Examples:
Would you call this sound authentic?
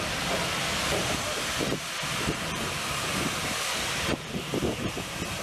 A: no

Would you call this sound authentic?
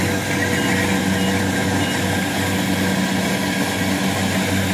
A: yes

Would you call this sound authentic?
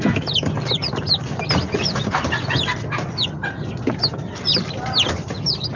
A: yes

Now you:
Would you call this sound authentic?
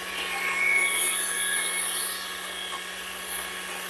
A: yes